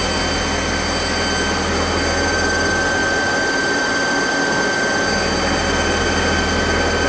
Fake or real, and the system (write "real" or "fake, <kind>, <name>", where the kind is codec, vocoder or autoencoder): real